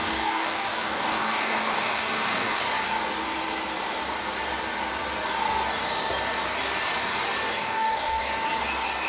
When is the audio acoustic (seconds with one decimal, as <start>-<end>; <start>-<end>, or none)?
2.6-7.6; 8.2-9.1